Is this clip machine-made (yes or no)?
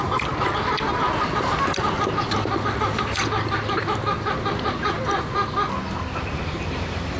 no